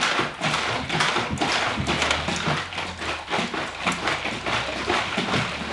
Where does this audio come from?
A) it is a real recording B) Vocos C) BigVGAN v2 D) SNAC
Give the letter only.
A